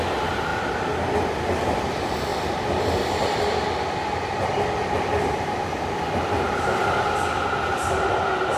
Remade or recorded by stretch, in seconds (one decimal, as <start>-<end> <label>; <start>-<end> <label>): 0.0-8.6 recorded